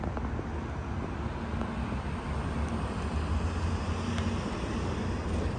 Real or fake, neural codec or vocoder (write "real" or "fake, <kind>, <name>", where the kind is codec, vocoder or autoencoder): real